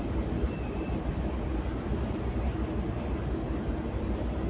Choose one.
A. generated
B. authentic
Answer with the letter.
B